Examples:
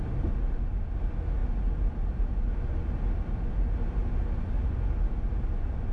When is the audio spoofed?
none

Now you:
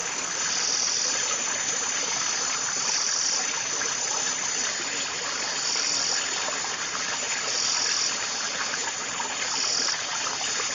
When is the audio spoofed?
none

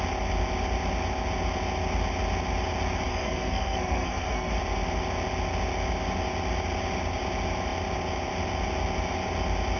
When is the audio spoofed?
3.1-4.5 (codec, SNAC)

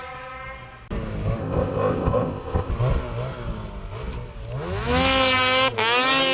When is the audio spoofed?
1.4-2.7 (codec, ZipCodec)

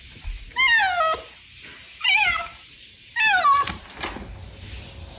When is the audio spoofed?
1.8-3.1 (vocoder, BigVGAN v2)

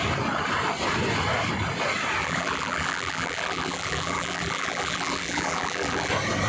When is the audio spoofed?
2.2-6.1 (vocoder, BigVGAN v2)